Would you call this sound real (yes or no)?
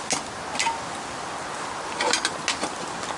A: yes